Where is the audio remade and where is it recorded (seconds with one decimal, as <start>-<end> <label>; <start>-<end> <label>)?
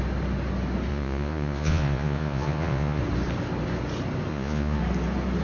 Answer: 0.0-0.9 recorded; 0.9-3.0 remade; 3.0-4.3 recorded; 4.3-4.8 remade; 4.8-5.4 recorded